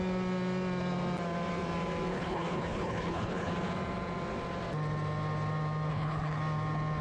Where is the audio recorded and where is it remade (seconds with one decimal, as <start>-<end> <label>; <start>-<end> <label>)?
0.0-2.1 recorded; 2.1-3.5 remade; 3.5-5.9 recorded; 5.9-6.4 remade; 6.4-7.0 recorded